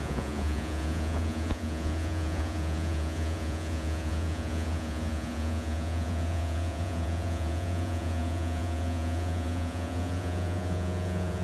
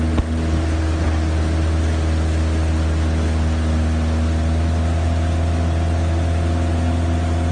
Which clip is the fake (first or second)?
first